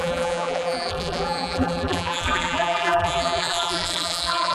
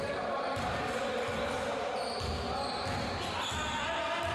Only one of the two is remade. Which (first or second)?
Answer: first